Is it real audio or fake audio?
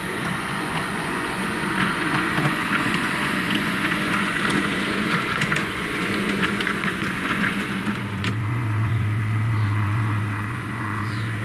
fake